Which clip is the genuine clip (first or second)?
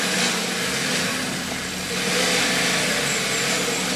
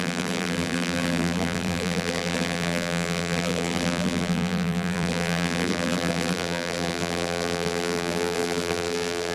first